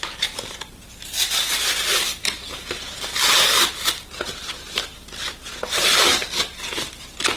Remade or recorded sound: remade